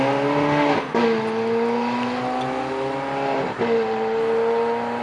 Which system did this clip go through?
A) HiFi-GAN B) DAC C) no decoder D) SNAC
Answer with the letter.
C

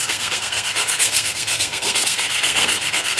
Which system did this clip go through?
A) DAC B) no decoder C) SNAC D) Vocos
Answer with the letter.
C